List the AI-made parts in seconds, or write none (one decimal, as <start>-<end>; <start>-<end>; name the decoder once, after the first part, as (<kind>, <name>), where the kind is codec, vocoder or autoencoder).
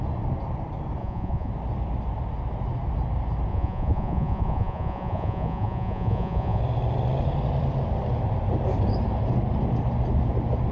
1.0-1.5 (vocoder, Vocos); 3.5-6.6